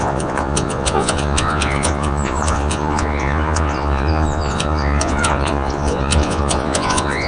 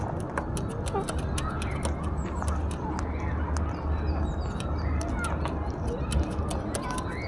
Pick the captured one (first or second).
second